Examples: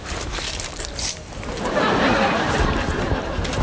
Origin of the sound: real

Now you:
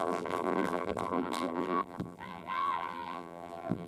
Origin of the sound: fake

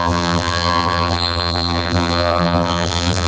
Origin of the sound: fake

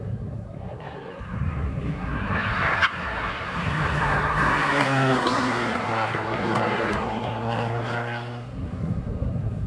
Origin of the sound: fake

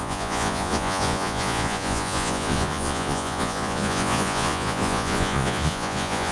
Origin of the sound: fake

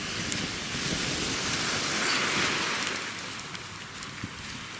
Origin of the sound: real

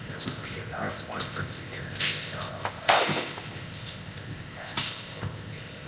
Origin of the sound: fake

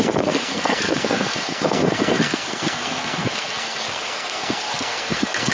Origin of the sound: fake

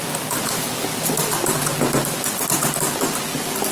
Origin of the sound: real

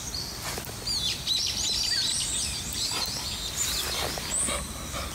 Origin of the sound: real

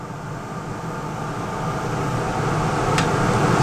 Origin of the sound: real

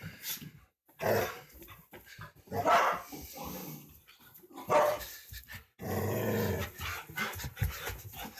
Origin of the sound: real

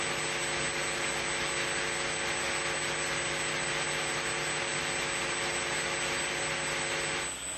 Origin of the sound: real